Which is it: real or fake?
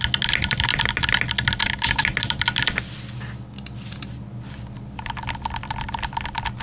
real